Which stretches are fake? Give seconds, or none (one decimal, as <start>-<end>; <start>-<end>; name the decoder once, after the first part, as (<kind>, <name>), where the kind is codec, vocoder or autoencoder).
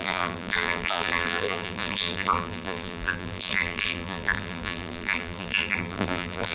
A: 0.0-6.5 (vocoder, BigVGAN v2)